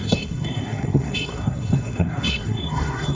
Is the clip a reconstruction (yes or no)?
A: yes